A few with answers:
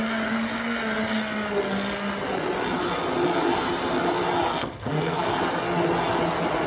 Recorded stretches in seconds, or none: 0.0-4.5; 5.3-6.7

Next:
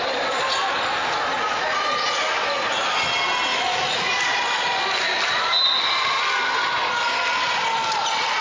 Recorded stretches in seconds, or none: 0.0-3.5; 4.1-8.4

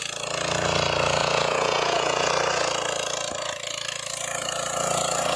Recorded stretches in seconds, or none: 0.0-1.2; 2.3-5.4

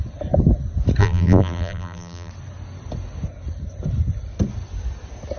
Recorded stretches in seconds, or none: 0.0-1.0; 2.3-5.4

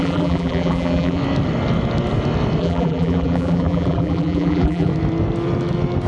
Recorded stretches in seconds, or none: 1.2-2.6; 4.9-6.1

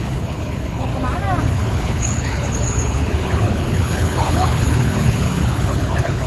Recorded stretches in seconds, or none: 0.9-1.4

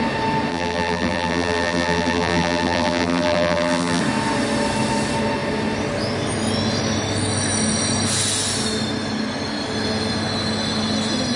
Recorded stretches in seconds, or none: 0.0-0.5; 4.0-11.4